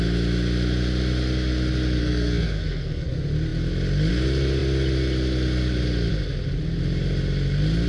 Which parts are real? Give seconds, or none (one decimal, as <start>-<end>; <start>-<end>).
0.0-2.0; 3.1-7.9